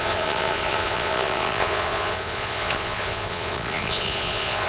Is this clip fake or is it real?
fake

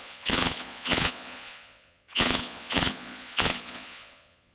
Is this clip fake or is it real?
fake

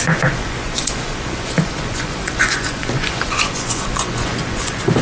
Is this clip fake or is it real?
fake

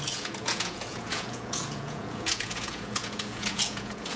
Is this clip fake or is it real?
fake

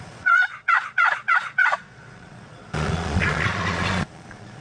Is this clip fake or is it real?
fake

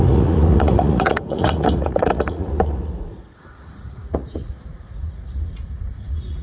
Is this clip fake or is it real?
fake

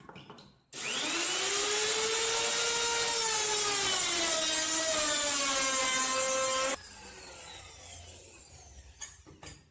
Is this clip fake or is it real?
real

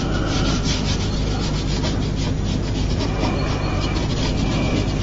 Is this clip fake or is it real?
real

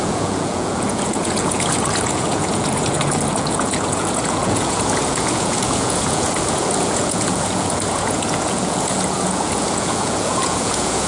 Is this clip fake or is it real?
fake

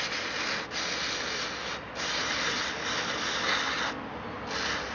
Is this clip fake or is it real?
real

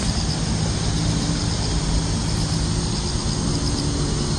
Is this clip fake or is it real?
real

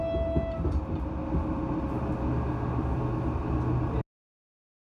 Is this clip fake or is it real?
real